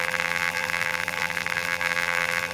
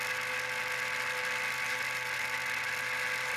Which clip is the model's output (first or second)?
first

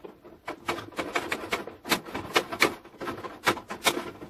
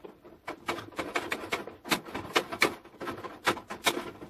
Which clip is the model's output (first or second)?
second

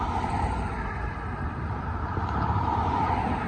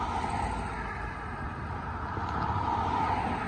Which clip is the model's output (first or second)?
first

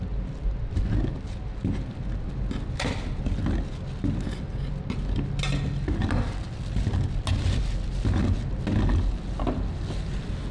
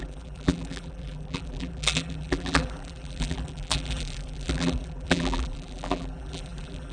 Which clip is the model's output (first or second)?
second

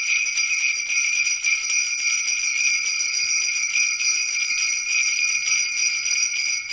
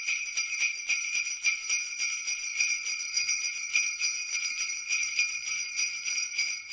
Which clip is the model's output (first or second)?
second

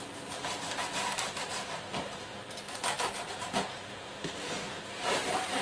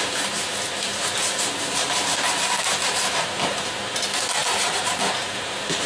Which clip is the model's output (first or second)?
first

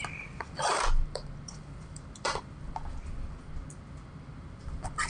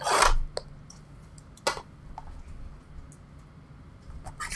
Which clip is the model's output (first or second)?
first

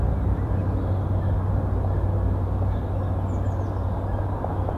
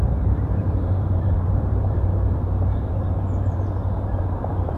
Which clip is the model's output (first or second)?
second